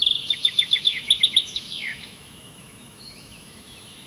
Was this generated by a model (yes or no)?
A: yes